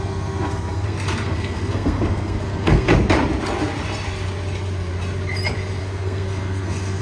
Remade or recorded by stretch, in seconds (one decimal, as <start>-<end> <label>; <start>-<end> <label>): 0.0-2.9 remade; 2.9-5.8 recorded; 5.8-7.0 remade